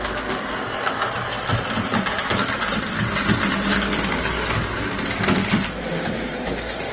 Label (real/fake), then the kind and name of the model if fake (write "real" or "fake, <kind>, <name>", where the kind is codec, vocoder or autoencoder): real